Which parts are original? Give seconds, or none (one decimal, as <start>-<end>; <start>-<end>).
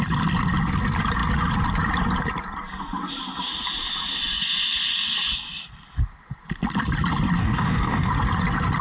0.0-7.4; 8.1-8.8